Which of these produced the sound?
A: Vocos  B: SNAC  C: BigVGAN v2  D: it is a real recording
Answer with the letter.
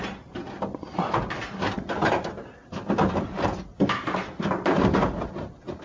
D